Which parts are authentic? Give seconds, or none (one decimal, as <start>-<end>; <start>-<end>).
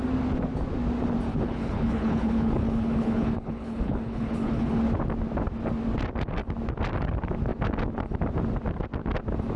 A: 0.0-1.3; 4.8-9.6